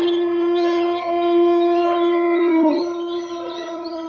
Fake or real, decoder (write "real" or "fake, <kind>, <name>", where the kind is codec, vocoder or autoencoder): fake, vocoder, HiFi-GAN